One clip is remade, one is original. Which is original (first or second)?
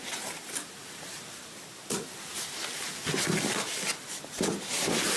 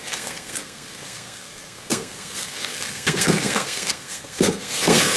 first